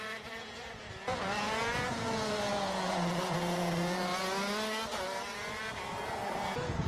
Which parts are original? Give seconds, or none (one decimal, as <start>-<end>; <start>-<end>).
4.1-6.3